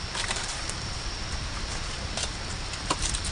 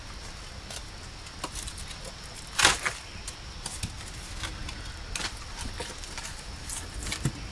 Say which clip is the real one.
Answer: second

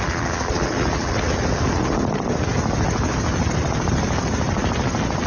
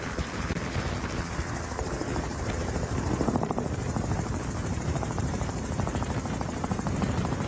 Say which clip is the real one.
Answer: first